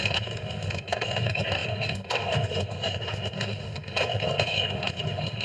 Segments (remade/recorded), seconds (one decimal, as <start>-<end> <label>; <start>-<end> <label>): 0.0-5.4 remade

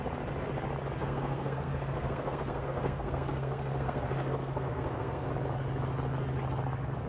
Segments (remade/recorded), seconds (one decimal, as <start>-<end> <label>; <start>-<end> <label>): 0.0-1.0 recorded; 1.0-5.3 remade; 5.3-7.1 recorded

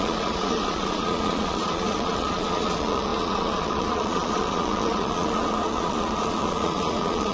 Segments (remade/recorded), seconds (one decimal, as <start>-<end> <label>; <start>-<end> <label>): 0.0-7.3 remade

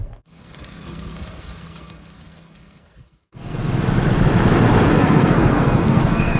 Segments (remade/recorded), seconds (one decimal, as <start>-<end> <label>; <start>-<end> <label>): 0.0-3.6 remade; 3.6-4.9 recorded; 4.9-6.4 remade

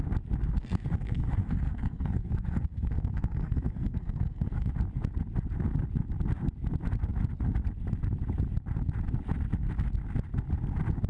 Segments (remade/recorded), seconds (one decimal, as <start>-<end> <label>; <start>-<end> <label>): 0.0-0.6 recorded; 0.6-4.7 remade; 4.7-11.1 recorded

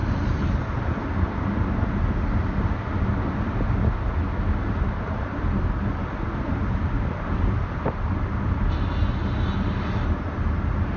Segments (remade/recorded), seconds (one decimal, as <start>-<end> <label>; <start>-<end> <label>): 0.0-11.0 recorded